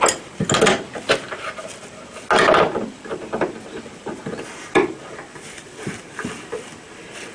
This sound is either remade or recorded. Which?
recorded